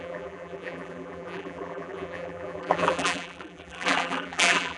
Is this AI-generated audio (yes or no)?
yes